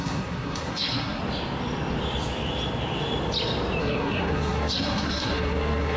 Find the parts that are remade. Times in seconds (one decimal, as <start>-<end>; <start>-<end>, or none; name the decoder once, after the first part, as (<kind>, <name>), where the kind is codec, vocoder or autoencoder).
0.0-1.2 (codec, SNAC); 3.8-6.0